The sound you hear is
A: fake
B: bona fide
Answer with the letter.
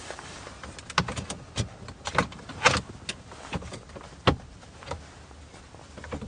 B